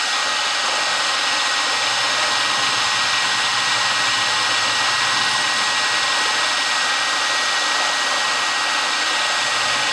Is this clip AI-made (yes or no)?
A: no